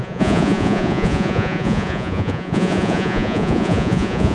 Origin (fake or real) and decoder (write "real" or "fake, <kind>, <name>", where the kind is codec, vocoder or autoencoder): fake, vocoder, Vocos